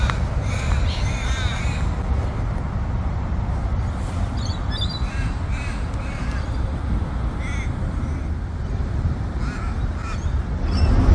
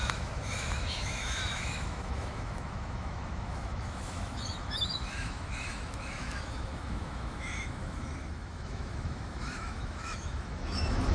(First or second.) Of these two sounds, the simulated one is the second